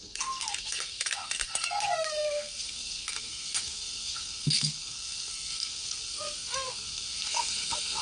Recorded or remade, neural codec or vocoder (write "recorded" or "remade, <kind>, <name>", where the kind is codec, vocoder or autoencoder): remade, codec, SNAC